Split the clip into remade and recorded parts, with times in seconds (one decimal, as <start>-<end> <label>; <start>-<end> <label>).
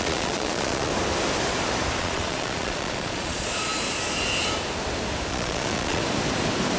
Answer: 0.0-0.9 remade; 0.9-2.0 recorded; 2.0-3.7 remade; 3.7-5.3 recorded; 5.3-6.0 remade; 6.0-6.8 recorded